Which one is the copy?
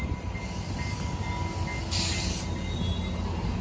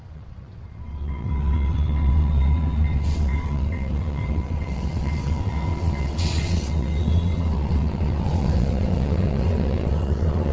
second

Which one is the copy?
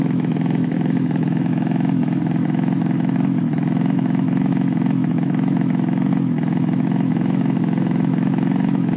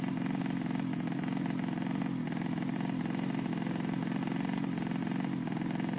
first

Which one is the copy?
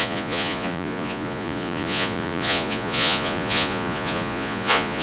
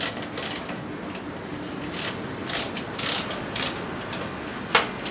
first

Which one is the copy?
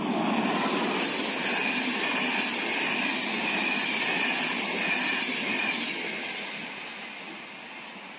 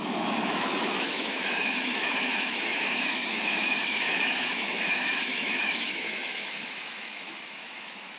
second